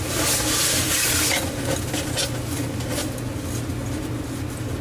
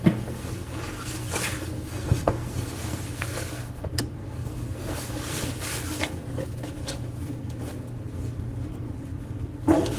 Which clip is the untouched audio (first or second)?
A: first